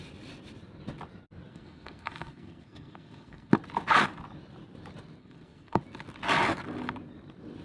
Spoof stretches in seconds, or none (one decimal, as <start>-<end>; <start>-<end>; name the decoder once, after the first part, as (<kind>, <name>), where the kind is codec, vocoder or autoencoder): 1.5-3.5 (codec, SNAC); 5.2-5.8